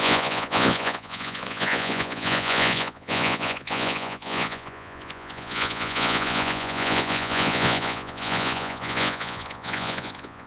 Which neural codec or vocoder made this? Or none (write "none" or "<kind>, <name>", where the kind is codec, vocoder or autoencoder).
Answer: vocoder, Vocos